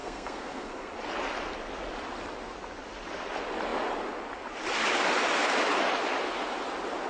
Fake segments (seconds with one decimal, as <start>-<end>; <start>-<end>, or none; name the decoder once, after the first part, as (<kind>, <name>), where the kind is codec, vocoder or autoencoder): 0.0-0.9 (codec, SNAC)

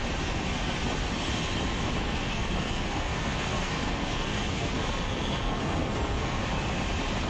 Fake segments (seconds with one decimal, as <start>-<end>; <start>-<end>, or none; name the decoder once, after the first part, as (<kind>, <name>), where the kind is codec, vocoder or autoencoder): 2.0-6.4 (codec, SNAC)

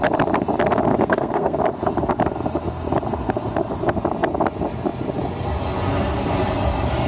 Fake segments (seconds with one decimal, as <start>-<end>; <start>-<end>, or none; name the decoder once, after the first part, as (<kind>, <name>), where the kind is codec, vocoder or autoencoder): 0.9-1.6 (codec, SNAC)

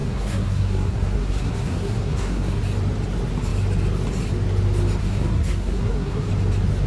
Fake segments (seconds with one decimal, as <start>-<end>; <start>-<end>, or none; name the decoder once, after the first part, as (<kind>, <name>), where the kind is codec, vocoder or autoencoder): 0.0-2.6 (codec, SNAC); 5.0-6.3

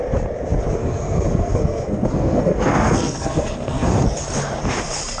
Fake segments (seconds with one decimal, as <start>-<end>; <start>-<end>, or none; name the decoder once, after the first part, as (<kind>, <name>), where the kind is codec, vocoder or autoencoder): 0.8-3.9 (codec, SNAC)

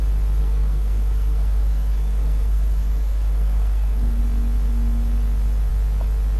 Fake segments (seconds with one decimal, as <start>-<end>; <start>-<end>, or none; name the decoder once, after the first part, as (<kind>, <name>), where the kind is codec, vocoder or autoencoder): 0.4-4.2 (codec, SNAC)

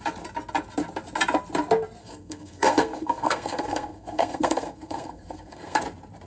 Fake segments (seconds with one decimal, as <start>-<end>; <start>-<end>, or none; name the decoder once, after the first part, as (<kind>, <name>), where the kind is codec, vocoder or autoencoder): 2.0-5.8 (codec, SNAC)